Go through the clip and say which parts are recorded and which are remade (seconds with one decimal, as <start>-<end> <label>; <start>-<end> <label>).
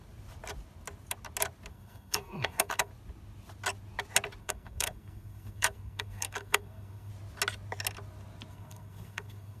0.0-1.7 recorded; 1.7-2.9 remade; 2.9-4.4 recorded; 4.4-7.1 remade; 7.1-8.5 recorded; 8.5-9.6 remade